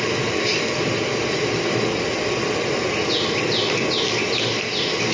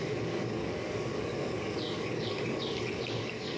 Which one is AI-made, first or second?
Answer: second